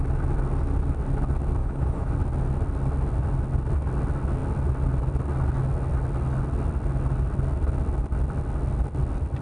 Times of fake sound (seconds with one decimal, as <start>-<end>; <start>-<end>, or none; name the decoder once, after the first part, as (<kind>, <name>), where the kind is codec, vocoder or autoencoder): 1.6-2.1 (autoencoder, DAC-VAE)